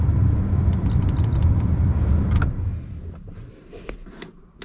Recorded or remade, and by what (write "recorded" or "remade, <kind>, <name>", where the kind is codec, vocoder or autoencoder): recorded